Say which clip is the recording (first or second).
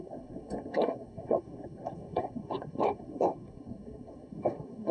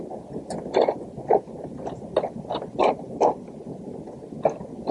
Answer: second